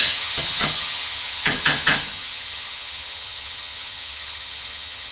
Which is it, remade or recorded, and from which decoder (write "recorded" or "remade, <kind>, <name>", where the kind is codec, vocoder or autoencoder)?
remade, vocoder, HiFi-GAN